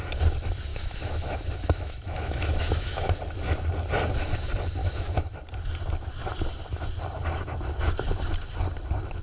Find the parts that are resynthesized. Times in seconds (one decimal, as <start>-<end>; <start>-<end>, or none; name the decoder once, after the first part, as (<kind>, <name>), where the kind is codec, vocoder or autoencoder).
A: 0.7-3.2 (autoencoder, DAC-VAE); 4.8-5.3